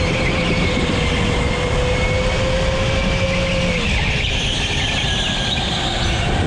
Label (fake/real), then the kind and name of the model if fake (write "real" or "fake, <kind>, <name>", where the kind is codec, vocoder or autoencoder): real